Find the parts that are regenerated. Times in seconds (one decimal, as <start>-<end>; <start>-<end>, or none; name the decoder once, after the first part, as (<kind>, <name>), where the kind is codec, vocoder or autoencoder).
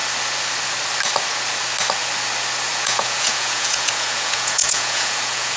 2.7-5.6 (vocoder, Vocos)